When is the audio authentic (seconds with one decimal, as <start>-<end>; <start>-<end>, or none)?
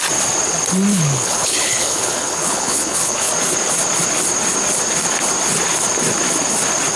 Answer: 0.0-0.9; 3.3-7.0